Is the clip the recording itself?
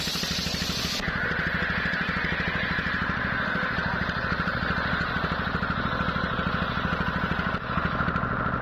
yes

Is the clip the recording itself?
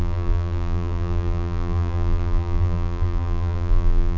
no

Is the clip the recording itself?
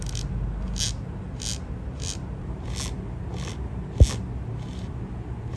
yes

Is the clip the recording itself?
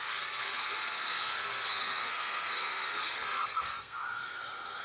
no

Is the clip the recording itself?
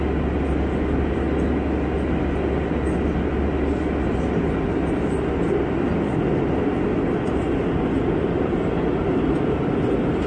yes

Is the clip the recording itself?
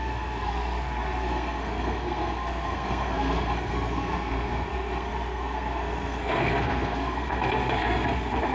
no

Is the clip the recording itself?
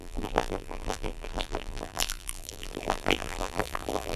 no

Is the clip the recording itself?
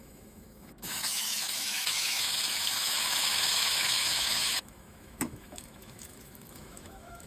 no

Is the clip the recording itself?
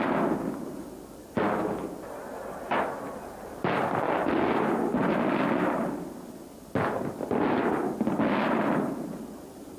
yes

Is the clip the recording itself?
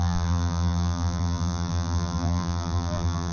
no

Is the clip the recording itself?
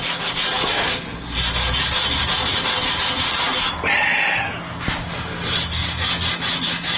yes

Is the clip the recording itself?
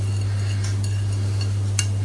yes